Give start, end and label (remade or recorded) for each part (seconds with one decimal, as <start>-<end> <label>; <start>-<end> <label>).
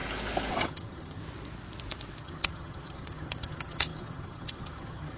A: 0.0-0.5 recorded; 0.5-1.2 remade; 1.2-2.2 recorded; 2.2-5.2 remade